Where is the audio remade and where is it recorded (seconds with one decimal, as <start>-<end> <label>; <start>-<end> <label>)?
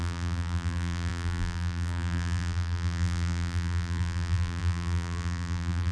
0.0-5.9 remade